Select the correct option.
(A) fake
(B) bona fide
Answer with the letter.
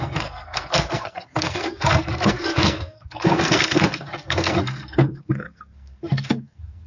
A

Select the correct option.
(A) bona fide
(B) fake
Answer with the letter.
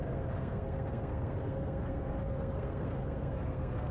B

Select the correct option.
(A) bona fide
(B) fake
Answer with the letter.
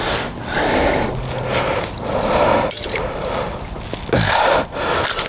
A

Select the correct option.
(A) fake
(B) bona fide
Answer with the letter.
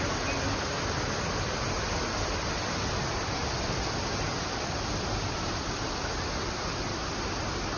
B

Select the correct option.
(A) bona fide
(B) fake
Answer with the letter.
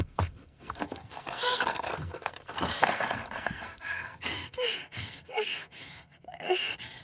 B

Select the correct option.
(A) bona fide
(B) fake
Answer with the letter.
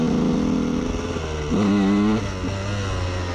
A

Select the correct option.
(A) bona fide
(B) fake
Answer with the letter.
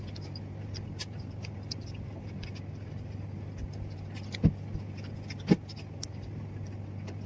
A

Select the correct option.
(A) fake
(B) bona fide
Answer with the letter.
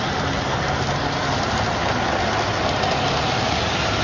B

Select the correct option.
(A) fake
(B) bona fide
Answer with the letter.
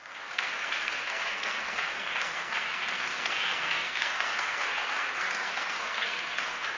A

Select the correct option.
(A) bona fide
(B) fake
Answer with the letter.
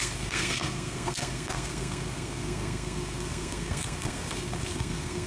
B